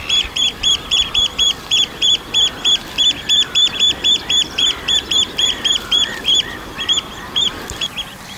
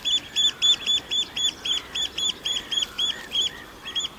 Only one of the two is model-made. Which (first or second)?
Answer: first